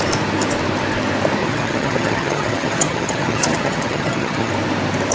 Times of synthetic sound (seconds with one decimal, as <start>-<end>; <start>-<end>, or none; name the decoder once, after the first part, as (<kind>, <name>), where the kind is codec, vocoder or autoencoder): 1.4-4.5 (vocoder, HiFi-GAN)